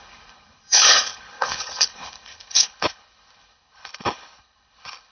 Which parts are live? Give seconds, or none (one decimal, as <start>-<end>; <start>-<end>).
none